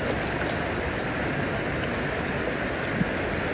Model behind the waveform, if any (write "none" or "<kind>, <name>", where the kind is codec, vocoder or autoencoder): none